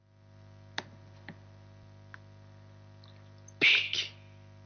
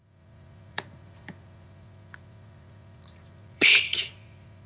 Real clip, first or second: first